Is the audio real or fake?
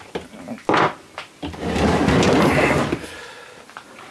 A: real